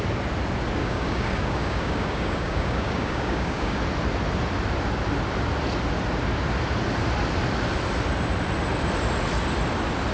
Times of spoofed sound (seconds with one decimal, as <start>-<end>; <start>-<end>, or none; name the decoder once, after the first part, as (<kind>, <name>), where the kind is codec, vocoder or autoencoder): 0.8-3.8 (codec, DAC)